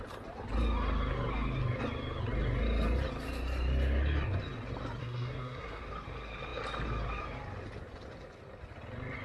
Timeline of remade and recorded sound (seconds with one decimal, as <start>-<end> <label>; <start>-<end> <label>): 0.0-5.0 recorded; 5.0-5.8 remade; 5.8-9.2 recorded